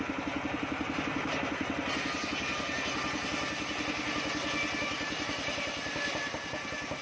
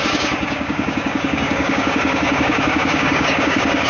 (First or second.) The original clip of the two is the first